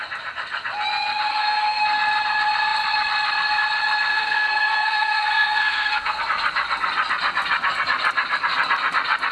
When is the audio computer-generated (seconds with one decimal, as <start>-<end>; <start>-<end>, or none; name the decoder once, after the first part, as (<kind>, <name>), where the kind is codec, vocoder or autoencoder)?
1.3-1.8 (codec, SNAC); 4.1-6.2

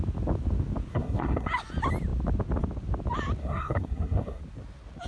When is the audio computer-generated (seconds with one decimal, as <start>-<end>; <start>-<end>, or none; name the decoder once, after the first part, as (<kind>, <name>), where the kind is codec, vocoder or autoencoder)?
0.9-1.5 (codec, SNAC); 3.4-4.4

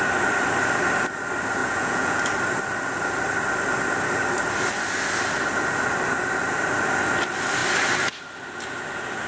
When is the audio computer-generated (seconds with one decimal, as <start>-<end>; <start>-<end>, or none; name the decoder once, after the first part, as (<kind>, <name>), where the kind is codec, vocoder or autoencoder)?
1.6-2.2 (vocoder, Vocos)

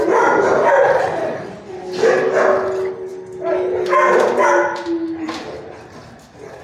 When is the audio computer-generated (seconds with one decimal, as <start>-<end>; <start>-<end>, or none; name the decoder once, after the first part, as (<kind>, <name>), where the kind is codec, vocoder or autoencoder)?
none

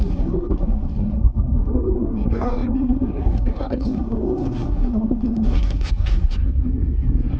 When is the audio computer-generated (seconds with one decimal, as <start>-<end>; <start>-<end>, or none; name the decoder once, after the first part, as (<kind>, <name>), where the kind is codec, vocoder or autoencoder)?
0.0-7.4 (codec, SNAC)

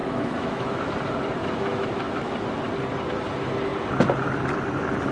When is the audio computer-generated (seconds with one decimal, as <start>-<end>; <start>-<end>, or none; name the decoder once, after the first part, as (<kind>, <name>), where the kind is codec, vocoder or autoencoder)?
0.0-0.8 (autoencoder, DAC-VAE); 1.4-2.3

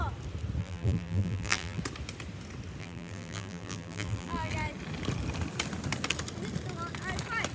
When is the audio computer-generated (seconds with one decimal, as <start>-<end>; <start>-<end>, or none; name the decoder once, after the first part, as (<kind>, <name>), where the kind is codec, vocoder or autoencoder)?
0.6-1.8 (vocoder, BigVGAN v2); 2.8-4.5

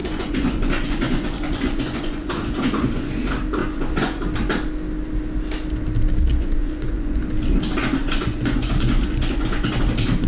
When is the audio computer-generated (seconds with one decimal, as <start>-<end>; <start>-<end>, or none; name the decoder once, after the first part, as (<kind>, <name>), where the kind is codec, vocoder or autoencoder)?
0.0-3.1 (vocoder, Vocos); 3.6-4.2; 6.3-7.2; 8.0-9.8